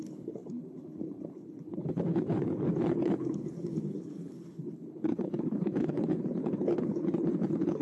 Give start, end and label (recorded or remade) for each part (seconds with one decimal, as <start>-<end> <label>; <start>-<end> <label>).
0.0-7.8 remade